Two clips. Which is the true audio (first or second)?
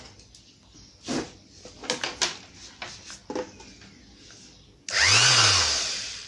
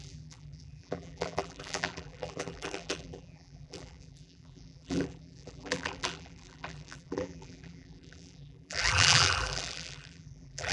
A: first